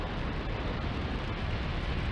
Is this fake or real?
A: real